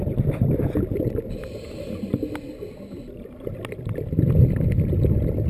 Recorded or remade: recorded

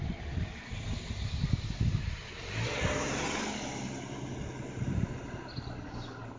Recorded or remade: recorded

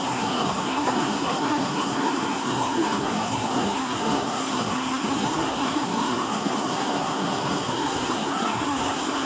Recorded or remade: remade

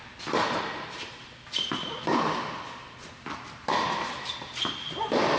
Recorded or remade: recorded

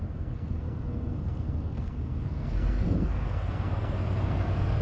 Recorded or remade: remade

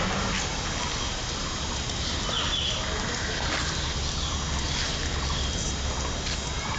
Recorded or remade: recorded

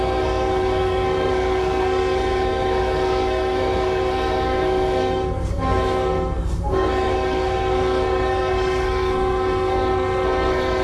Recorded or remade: remade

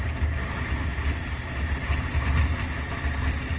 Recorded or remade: recorded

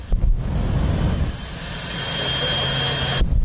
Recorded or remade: recorded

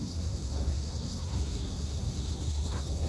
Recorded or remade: remade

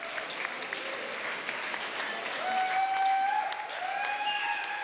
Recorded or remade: recorded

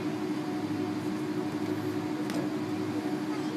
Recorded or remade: recorded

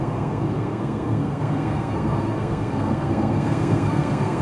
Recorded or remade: remade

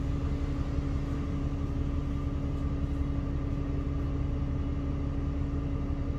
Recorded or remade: recorded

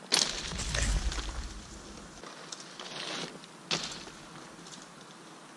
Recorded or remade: recorded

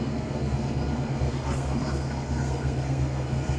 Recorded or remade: remade